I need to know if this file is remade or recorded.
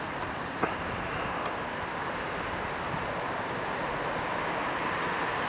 recorded